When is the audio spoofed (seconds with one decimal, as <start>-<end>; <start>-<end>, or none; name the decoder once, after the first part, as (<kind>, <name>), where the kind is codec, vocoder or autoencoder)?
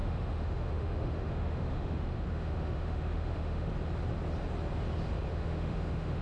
0.0-3.7 (autoencoder, DAC-VAE); 5.3-6.2